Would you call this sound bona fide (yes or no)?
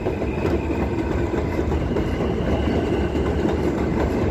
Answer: yes